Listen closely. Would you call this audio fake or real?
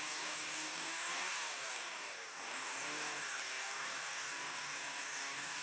fake